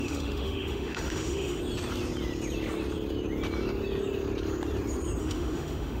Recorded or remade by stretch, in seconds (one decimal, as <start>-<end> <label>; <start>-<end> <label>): 0.0-1.6 remade; 1.6-5.2 recorded; 5.2-6.0 remade